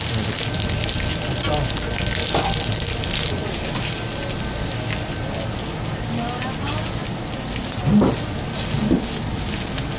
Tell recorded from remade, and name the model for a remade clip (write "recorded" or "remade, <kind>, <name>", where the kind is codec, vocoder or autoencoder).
recorded